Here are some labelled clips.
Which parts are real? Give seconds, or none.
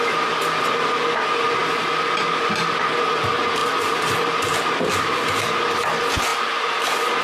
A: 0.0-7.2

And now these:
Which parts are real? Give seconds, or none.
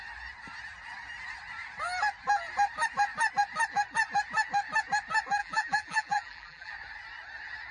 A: 0.0-5.4; 6.7-7.7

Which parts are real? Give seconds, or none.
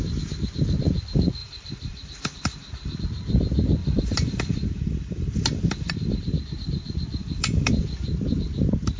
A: 0.0-1.4; 3.0-3.8; 6.2-7.2; 7.7-9.0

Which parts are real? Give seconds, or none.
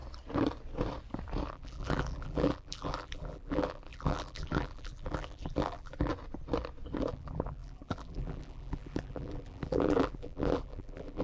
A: 0.0-1.5; 6.1-7.1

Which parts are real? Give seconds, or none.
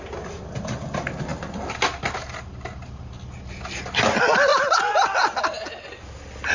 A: 0.0-6.5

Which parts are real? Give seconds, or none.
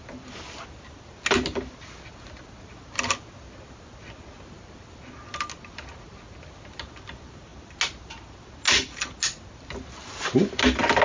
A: 0.0-11.0